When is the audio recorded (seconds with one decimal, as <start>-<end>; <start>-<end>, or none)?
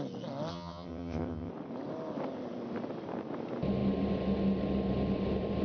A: 0.0-0.5; 1.5-5.6